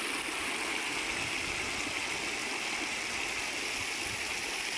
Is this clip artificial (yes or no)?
no